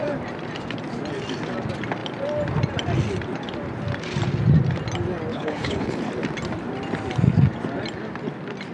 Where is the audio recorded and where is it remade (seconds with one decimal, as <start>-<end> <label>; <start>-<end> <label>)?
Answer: 0.0-5.3 recorded; 5.3-6.1 remade; 6.1-8.7 recorded